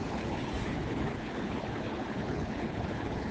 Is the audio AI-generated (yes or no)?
yes